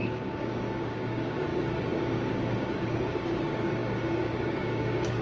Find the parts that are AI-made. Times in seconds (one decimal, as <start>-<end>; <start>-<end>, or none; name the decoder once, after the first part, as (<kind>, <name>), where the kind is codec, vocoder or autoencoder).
0.0-5.2 (codec, DAC)